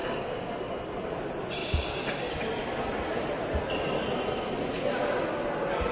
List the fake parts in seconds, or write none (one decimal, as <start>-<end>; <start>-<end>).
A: 0.0-0.5